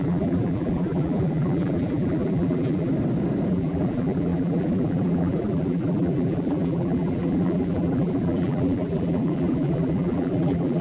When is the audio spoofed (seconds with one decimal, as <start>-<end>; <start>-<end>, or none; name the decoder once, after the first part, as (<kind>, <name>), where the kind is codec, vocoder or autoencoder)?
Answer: 0.0-2.9 (vocoder, BigVGAN v2); 3.5-10.8